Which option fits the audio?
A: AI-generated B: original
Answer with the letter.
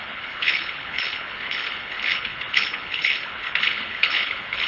A